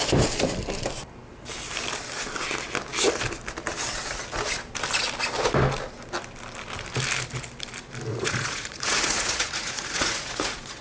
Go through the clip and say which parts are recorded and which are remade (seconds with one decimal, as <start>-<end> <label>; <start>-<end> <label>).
0.0-8.1 recorded; 8.1-10.8 remade